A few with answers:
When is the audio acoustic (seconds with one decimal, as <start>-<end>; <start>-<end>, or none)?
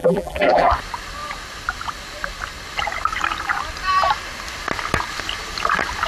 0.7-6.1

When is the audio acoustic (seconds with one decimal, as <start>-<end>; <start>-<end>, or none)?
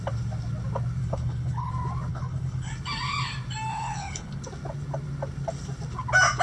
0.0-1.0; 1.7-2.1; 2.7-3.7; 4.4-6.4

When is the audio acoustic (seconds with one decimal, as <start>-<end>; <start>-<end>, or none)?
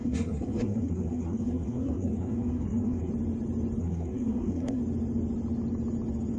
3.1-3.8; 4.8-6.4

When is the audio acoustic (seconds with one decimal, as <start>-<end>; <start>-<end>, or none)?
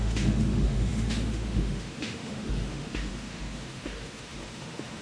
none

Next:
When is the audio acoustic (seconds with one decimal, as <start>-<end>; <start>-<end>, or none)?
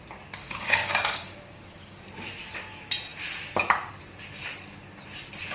0.0-0.4; 2.0-5.5